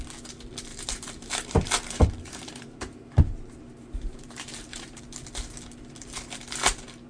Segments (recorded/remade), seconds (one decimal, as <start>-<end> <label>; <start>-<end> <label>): 0.0-0.7 recorded; 0.7-5.0 remade; 5.0-7.1 recorded